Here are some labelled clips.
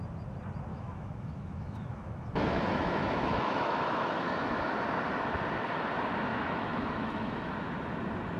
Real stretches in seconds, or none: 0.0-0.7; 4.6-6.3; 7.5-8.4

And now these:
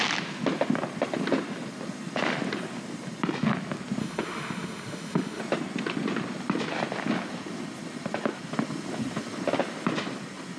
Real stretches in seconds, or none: 0.0-4.0; 5.4-10.6

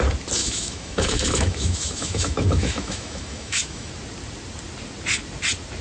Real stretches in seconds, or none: 0.0-0.4; 3.9-5.8

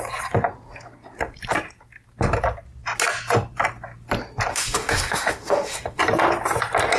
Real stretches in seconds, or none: 0.0-4.5; 6.0-7.0

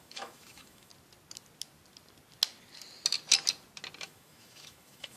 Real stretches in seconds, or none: 0.9-4.0

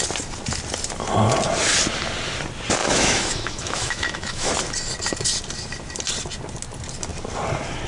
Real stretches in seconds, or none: 0.0-2.8; 4.5-7.9

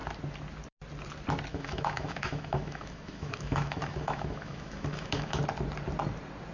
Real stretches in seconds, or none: 0.0-1.5; 5.4-6.5

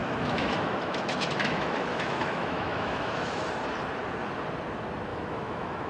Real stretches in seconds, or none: 3.5-5.1